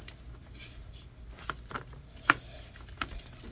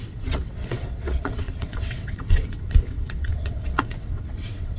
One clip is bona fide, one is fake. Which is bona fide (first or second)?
first